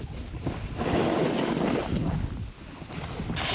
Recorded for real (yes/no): yes